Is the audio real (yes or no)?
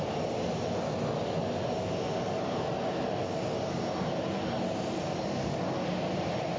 yes